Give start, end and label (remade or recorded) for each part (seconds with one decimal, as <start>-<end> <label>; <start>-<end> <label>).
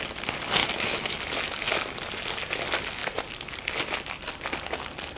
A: 0.0-0.6 recorded; 0.6-1.1 remade; 1.1-5.2 recorded